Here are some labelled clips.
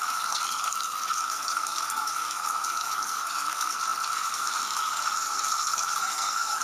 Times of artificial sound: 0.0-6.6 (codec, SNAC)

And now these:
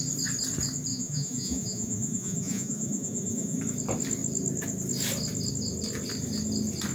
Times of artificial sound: 0.9-3.6 (vocoder, Vocos)

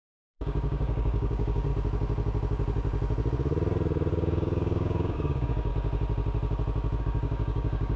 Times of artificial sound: 0.0-1.7 (codec, DAC); 4.1-5.7; 7.0-8.0

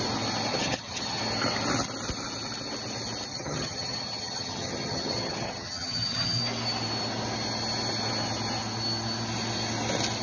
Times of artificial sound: 0.5-1.2 (vocoder, HiFi-GAN); 3.3-6.4

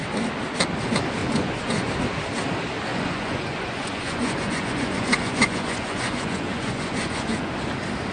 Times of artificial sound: 1.2-1.9 (vocoder, Vocos); 2.9-7.5

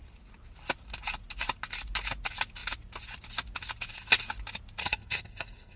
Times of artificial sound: 4.8-5.8 (codec, SNAC)